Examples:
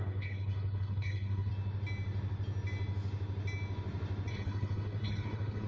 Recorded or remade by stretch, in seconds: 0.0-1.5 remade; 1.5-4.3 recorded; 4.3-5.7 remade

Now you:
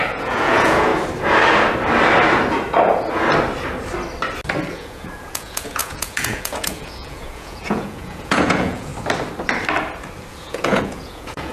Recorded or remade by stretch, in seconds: 0.0-0.9 remade; 0.9-4.7 recorded; 4.7-8.9 remade; 8.9-10.3 recorded; 10.3-11.5 remade

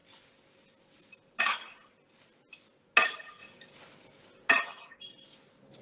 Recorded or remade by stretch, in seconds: 0.0-5.8 recorded

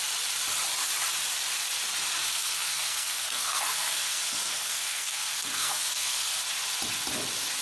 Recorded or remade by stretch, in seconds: 0.0-2.2 recorded; 2.2-6.4 remade; 6.4-7.6 recorded